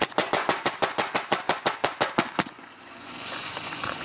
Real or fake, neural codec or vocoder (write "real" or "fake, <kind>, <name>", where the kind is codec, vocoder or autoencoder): fake, vocoder, Vocos